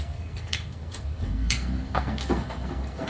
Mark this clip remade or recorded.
remade